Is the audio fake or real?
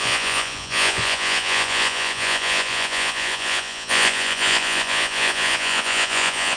fake